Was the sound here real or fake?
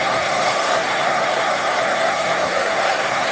fake